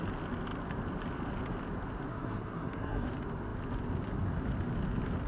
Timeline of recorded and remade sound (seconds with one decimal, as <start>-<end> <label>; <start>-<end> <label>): 0.0-2.1 recorded; 2.1-3.1 remade; 3.1-5.3 recorded